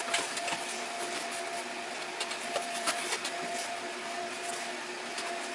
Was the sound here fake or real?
real